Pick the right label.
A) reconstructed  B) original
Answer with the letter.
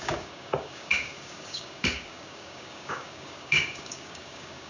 A